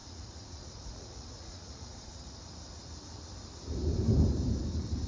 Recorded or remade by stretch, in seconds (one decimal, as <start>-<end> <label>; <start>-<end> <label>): 0.0-2.4 remade; 2.4-5.1 recorded